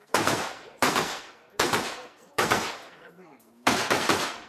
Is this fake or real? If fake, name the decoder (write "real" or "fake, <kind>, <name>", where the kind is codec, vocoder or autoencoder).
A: fake, codec, SNAC